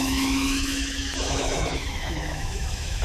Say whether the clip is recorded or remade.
remade